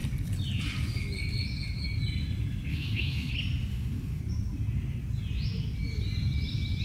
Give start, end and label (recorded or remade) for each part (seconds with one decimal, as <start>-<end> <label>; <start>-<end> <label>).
0.0-2.7 recorded; 2.7-3.3 remade; 3.3-3.7 recorded; 3.7-4.2 remade; 4.2-6.8 recorded